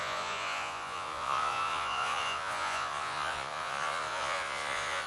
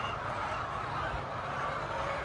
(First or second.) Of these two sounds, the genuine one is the second